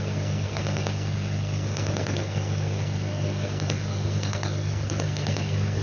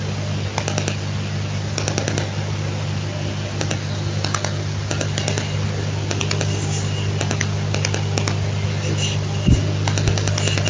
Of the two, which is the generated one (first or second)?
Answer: first